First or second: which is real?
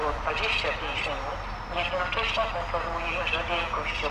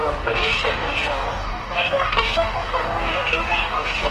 first